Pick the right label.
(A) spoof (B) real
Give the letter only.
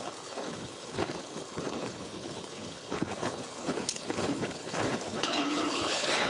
A